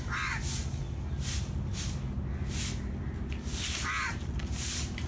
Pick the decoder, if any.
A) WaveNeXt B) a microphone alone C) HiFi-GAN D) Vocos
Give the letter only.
B